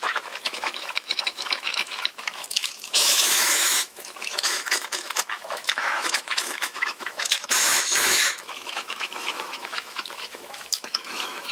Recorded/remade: remade